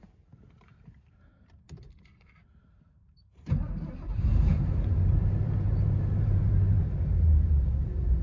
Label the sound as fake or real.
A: fake